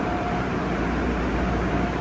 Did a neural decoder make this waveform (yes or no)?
yes